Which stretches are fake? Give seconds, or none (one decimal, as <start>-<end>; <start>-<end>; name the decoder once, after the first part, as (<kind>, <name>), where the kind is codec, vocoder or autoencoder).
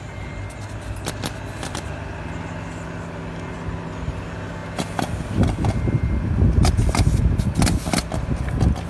none